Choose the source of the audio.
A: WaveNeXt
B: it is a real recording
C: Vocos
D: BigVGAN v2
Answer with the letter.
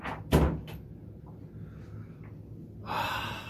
B